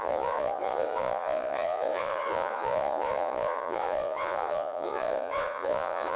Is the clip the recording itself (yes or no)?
no